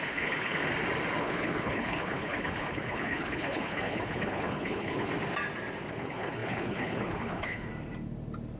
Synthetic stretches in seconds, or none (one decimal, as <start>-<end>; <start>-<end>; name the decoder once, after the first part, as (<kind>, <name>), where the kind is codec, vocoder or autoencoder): 0.0-0.6 (codec, HILCodec); 1.2-5.1; 5.9-7.7